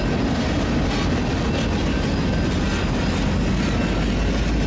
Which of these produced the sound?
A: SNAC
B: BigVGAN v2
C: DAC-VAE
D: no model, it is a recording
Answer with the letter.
D